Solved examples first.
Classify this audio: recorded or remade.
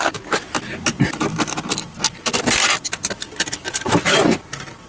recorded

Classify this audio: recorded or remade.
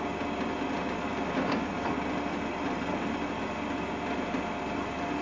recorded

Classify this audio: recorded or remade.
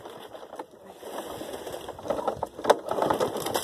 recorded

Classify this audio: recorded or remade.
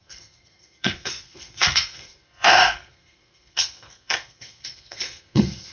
remade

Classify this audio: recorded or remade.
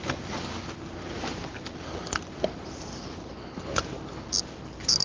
recorded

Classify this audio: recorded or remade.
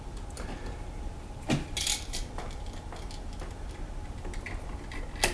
recorded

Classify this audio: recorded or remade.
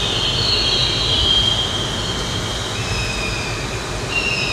recorded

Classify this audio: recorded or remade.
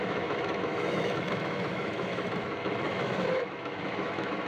remade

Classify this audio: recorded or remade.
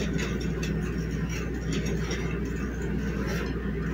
recorded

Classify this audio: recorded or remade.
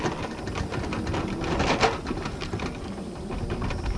recorded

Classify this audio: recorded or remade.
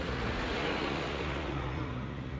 remade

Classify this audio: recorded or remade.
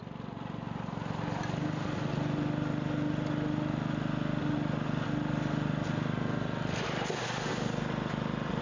recorded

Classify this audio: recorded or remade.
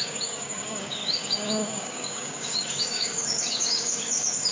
remade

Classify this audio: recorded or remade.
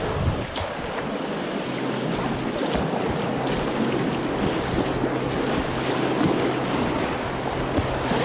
recorded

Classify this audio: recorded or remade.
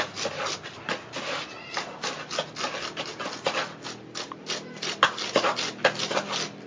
recorded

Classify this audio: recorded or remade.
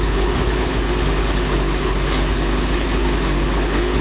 remade